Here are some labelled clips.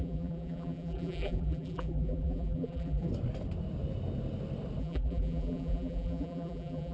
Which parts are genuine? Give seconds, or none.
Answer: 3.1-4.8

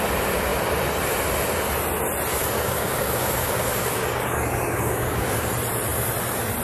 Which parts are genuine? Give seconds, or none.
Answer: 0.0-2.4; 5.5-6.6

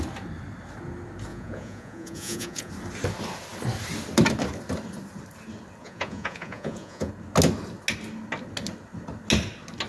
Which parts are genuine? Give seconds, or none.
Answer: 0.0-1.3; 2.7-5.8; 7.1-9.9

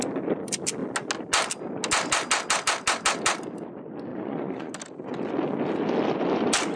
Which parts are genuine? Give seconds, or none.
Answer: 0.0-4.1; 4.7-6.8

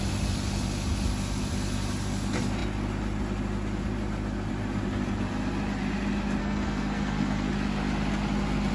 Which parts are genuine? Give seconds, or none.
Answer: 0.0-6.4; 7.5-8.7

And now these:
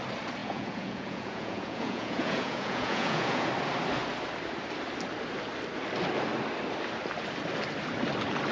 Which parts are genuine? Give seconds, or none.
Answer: 0.0-0.4; 3.5-8.5

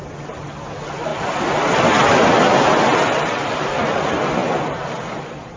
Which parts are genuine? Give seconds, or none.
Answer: 0.0-5.6

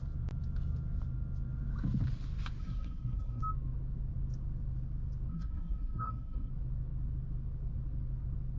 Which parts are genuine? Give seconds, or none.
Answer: 0.0-2.6; 3.4-5.3; 6.5-8.6